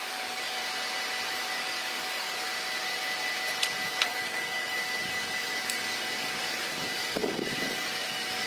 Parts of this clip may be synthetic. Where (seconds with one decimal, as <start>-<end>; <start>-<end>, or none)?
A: 0.0-0.6; 1.3-2.5; 3.9-8.5